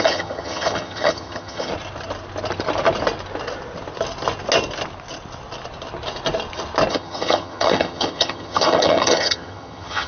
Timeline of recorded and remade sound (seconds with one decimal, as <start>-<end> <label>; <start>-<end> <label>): 0.0-1.7 remade; 1.7-6.9 recorded; 6.9-10.1 remade